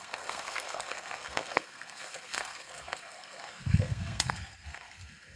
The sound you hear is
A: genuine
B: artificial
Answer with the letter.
B